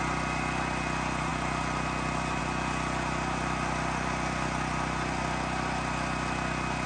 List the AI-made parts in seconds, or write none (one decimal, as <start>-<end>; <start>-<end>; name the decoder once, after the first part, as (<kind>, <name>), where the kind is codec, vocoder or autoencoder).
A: none